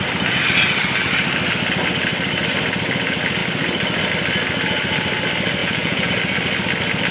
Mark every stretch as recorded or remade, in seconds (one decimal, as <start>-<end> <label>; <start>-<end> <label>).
0.0-5.6 recorded; 5.6-6.1 remade; 6.1-7.1 recorded